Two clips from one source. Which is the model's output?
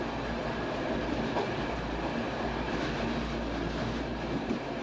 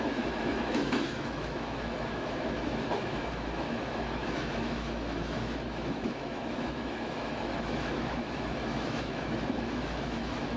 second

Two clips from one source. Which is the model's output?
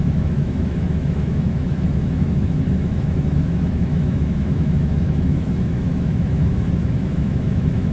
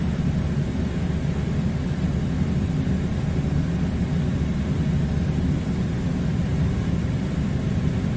first